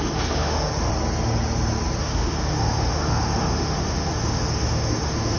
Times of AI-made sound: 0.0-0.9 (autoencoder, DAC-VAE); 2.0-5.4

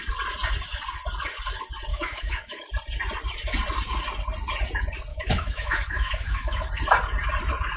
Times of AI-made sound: 1.9-2.7 (autoencoder, DAC-VAE); 5.1-6.7